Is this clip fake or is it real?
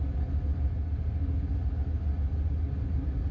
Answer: real